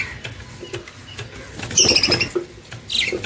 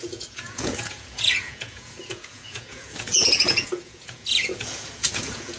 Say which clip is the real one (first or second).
first